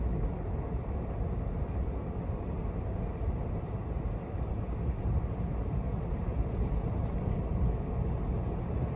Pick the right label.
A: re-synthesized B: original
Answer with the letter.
B